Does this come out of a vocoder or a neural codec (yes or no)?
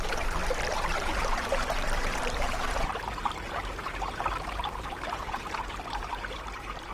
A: yes